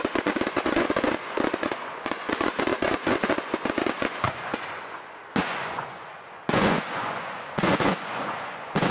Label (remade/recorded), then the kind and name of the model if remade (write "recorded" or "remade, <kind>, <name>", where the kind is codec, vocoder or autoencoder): remade, vocoder, Vocos